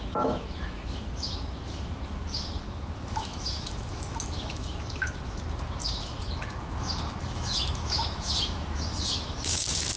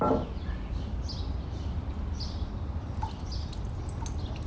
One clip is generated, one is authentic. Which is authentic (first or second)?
second